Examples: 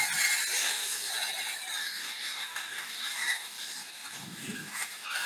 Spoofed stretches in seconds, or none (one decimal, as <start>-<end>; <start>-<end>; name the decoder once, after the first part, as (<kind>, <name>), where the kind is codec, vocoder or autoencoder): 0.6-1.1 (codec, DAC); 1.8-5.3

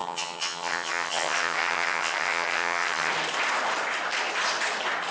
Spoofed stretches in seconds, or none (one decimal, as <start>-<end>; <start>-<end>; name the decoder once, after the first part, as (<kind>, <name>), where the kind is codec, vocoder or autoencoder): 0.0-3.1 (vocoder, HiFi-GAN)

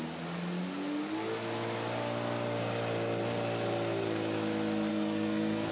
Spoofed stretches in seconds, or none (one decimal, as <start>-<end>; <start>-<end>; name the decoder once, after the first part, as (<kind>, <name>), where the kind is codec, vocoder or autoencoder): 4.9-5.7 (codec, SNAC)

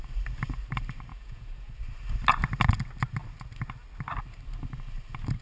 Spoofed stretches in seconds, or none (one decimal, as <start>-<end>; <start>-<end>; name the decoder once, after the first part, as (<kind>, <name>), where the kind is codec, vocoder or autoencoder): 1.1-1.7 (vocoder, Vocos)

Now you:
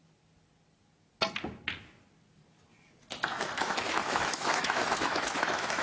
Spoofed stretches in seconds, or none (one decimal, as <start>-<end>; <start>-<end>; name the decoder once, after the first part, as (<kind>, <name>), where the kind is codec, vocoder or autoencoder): 3.4-5.8 (autoencoder, DAC-VAE)